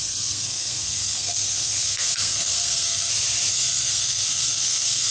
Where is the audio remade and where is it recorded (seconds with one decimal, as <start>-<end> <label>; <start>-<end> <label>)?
0.0-3.1 remade; 3.1-3.5 recorded; 3.5-5.1 remade